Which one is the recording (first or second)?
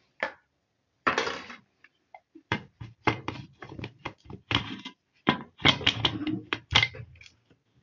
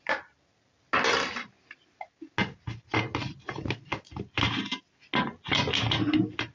second